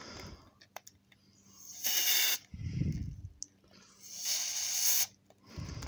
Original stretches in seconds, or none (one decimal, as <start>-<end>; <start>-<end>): 2.5-5.9